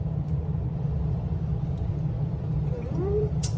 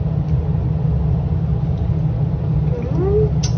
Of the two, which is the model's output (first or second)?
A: first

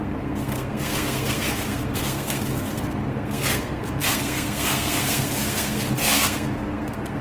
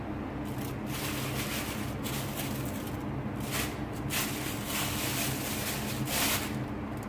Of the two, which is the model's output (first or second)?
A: first